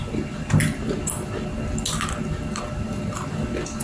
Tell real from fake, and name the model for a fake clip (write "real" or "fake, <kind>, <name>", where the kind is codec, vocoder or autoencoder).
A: real